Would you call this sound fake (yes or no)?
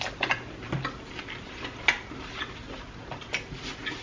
no